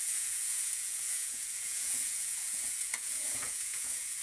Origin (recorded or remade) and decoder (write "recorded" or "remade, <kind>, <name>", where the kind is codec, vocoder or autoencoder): remade, vocoder, Vocos